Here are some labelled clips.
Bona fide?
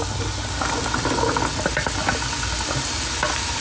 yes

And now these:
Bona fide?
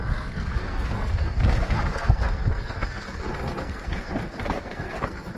no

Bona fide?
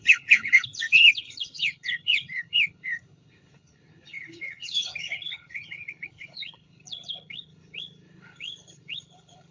no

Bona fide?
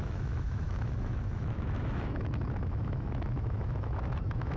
no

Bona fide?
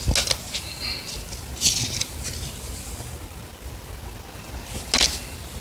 yes